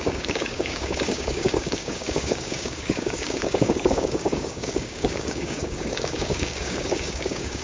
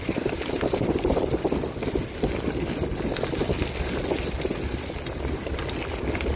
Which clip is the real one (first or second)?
second